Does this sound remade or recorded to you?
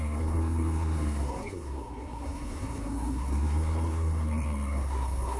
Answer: remade